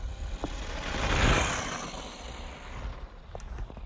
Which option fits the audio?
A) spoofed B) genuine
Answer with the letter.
B